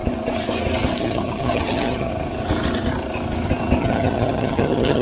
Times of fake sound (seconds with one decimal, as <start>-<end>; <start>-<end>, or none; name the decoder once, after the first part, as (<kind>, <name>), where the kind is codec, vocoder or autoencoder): 1.0-2.1 (vocoder, HiFi-GAN); 3.8-5.0